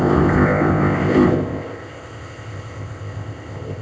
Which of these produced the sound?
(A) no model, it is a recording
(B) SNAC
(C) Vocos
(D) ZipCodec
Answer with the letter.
D